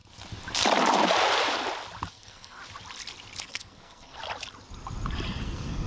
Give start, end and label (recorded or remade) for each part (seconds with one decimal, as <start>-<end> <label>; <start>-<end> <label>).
0.0-2.1 recorded; 2.1-2.6 remade; 2.6-3.4 recorded; 3.4-4.2 remade; 4.2-5.4 recorded; 5.4-5.9 remade